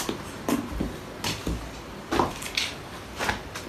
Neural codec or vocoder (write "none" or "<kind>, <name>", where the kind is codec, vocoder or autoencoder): none